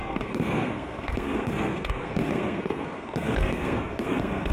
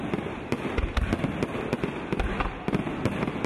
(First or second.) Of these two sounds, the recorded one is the second